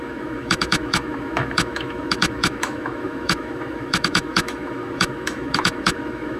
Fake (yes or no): yes